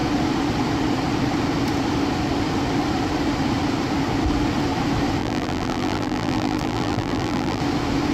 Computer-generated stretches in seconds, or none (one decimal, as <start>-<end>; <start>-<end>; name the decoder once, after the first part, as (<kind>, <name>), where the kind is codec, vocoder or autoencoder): 5.2-7.6 (vocoder, BigVGAN v2)